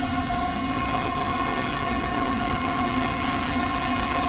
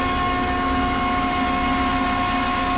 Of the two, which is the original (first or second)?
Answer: second